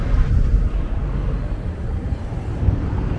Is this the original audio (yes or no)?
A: yes